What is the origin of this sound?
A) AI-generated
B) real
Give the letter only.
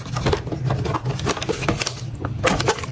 B